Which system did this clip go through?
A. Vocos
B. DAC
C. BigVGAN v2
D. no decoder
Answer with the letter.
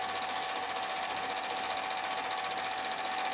D